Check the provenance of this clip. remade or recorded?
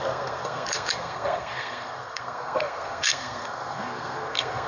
remade